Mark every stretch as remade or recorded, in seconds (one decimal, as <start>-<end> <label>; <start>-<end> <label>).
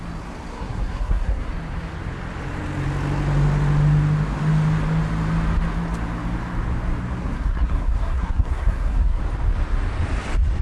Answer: 0.0-0.5 recorded; 0.5-1.5 remade; 1.5-7.2 recorded; 7.2-9.2 remade; 9.2-10.6 recorded